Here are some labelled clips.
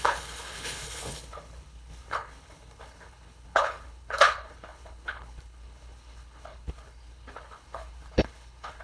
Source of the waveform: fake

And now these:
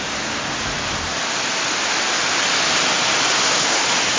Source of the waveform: real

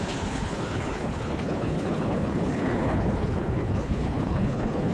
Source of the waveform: fake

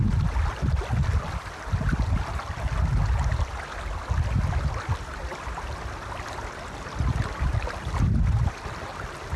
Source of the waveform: real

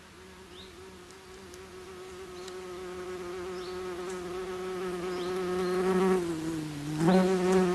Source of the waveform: real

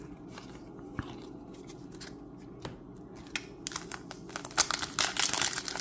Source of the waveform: real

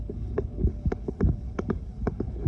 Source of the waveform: fake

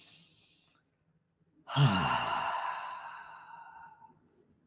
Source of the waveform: real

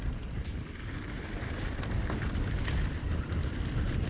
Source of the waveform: real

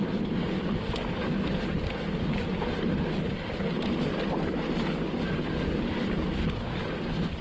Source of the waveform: real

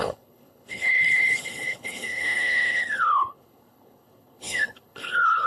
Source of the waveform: fake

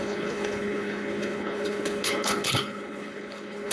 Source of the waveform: fake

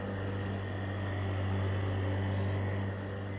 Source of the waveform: real